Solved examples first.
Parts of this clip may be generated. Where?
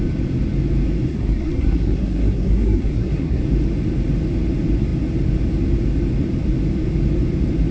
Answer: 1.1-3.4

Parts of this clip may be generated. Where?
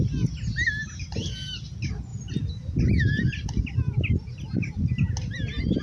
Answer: none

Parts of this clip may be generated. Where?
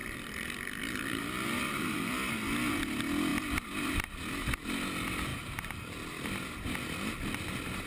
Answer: 0.0-2.3; 3.3-3.9; 5.3-6.4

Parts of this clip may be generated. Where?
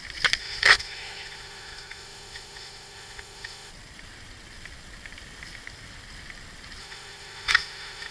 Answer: 0.4-3.7; 6.8-8.1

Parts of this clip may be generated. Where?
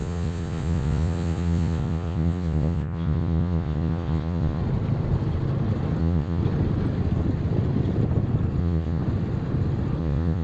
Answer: 0.0-4.6; 6.0-6.4; 8.6-9.0; 10.0-10.4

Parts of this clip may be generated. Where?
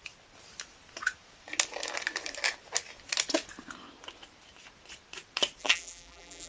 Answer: 5.6-6.5